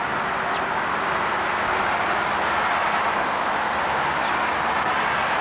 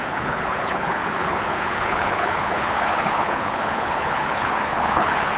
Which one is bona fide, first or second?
first